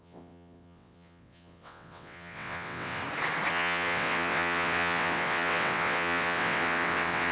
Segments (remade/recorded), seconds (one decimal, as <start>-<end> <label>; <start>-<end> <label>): 0.0-3.0 remade; 3.0-3.5 recorded; 3.5-7.3 remade